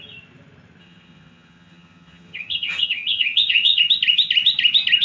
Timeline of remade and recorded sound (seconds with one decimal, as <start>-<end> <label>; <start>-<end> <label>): 0.0-0.8 recorded; 0.8-3.8 remade; 3.8-5.0 recorded